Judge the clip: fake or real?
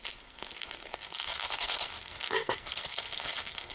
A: fake